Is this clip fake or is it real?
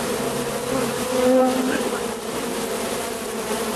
real